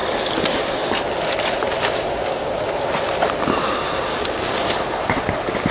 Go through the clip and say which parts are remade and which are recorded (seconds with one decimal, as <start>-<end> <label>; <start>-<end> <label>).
0.0-2.0 recorded; 2.0-2.7 remade; 2.7-4.1 recorded; 4.1-4.7 remade; 4.7-5.7 recorded